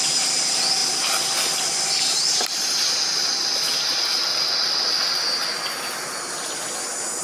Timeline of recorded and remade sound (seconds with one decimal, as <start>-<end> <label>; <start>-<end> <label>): 0.0-7.2 recorded